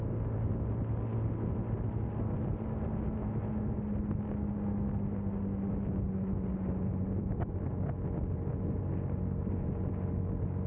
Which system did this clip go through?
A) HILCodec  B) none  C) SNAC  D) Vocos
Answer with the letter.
B